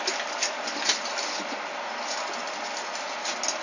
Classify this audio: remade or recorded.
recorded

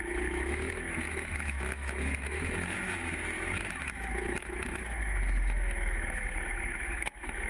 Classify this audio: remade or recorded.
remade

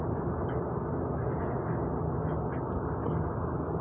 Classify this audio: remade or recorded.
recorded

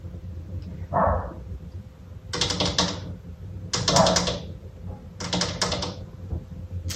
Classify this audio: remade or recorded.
recorded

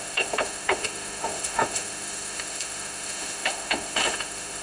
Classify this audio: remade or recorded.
remade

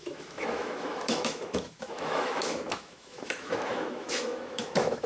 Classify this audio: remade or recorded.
remade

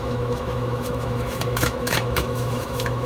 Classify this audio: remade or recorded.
remade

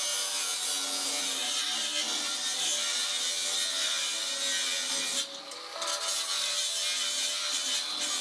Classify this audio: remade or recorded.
recorded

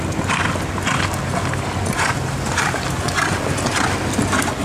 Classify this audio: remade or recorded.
recorded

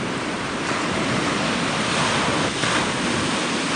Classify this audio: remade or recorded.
recorded